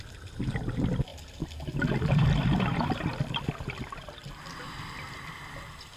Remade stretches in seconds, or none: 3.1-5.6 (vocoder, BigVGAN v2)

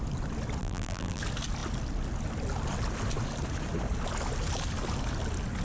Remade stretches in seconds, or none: 0.6-1.2 (vocoder, BigVGAN v2)

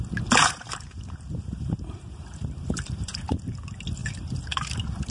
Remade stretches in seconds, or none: 0.4-3.5 (vocoder, BigVGAN v2); 4.0-5.1

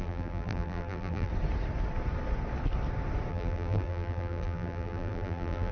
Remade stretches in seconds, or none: 0.0-1.3 (vocoder, BigVGAN v2); 3.3-5.7